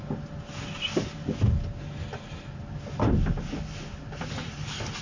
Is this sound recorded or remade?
recorded